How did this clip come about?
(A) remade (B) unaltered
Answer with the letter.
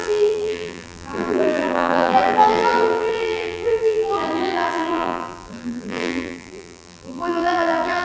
A